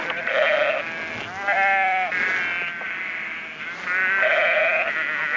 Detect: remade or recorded recorded